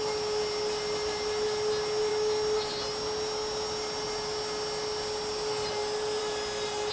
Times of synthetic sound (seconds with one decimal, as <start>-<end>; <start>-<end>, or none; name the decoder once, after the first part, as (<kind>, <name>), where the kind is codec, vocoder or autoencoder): none